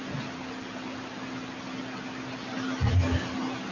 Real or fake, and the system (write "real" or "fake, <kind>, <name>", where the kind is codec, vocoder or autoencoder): real